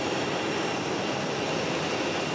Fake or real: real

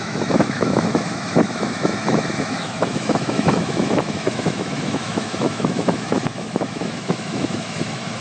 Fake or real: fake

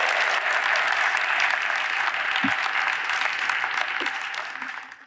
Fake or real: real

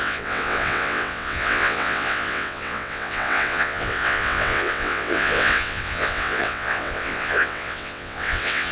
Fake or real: fake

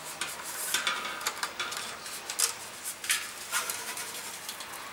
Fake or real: real